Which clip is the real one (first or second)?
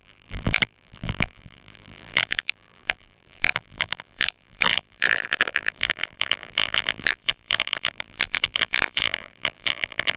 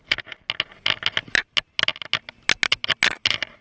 second